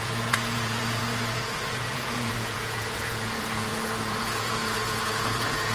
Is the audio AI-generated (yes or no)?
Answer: yes